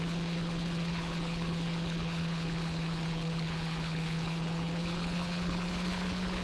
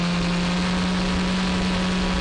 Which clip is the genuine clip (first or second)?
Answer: second